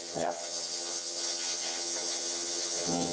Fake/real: fake